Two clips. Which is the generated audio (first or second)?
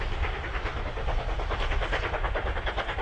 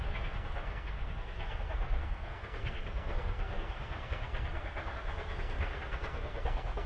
second